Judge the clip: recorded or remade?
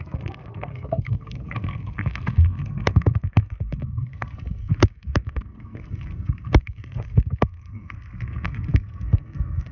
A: remade